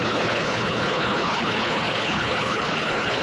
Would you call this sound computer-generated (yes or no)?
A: yes